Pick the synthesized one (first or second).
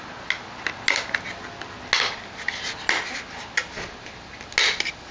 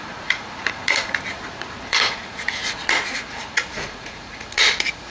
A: second